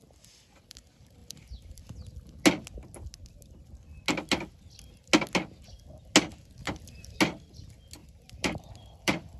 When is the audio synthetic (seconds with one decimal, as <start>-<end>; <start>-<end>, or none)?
1.2-1.8; 6.6-7.2; 8.0-9.4